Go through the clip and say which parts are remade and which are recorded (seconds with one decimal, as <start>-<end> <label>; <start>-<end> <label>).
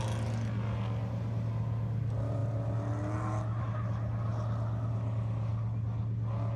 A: 0.0-6.6 recorded